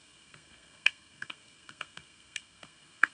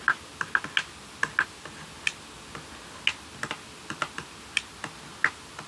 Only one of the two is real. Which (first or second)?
second